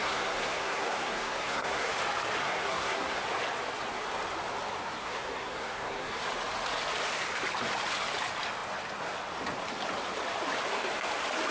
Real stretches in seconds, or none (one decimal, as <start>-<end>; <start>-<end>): 1.9-2.4; 3.2-5.0; 6.2-11.5